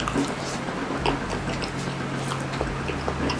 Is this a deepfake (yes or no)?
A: no